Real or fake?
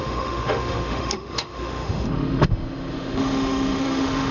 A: fake